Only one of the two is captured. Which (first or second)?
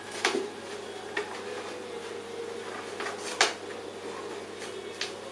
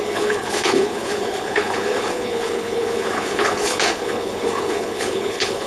first